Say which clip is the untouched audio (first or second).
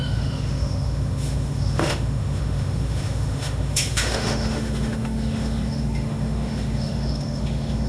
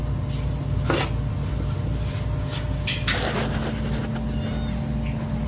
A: second